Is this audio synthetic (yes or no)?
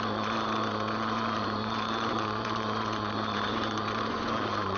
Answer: yes